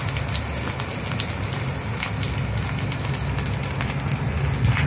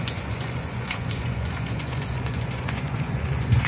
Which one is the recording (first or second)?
first